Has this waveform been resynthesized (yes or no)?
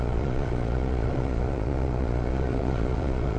yes